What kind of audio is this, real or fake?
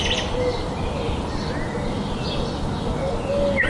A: real